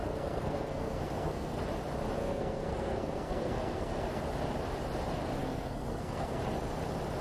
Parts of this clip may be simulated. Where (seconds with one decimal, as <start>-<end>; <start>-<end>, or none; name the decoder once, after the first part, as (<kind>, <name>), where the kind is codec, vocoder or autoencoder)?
0.0-1.6 (codec, SNAC); 2.2-4.2; 5.4-6.4

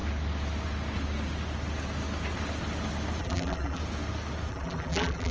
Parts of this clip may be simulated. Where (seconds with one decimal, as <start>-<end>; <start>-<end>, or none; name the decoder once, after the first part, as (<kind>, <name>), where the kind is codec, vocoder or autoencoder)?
3.2-3.8 (vocoder, BigVGAN v2); 4.5-5.3

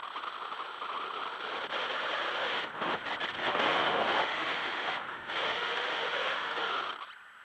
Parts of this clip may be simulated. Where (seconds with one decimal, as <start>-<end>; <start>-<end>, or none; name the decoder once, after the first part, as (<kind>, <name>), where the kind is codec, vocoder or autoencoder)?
2.4-3.0 (autoencoder, DAC-VAE); 3.4-6.7

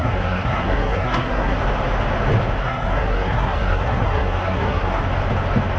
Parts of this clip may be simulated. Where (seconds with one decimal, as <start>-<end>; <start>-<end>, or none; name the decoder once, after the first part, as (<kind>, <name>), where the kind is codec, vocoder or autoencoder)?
0.0-1.6 (codec, SNAC); 2.6-5.0

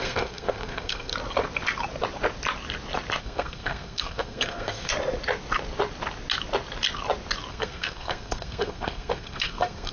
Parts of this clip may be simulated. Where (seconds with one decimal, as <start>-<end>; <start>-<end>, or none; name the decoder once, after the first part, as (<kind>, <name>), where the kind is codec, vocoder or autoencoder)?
0.0-1.1 (codec, SNAC); 3.2-4.9; 7.5-9.9

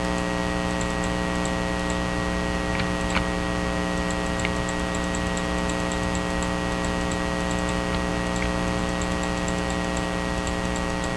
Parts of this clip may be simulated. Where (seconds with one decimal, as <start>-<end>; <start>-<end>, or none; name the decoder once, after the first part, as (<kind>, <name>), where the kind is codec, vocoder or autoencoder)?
none